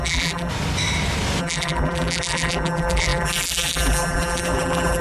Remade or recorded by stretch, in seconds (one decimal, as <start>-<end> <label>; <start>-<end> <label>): 0.0-0.5 remade; 0.5-1.4 recorded; 1.4-5.0 remade